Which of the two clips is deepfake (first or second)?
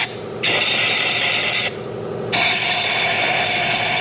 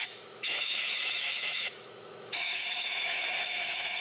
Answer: second